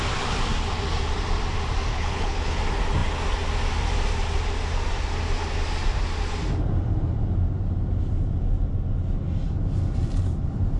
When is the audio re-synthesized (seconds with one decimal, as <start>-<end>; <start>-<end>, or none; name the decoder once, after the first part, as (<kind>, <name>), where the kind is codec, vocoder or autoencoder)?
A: 1.9-2.6 (codec, HILCodec)